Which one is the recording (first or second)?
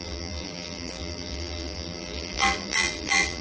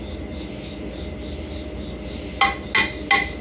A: second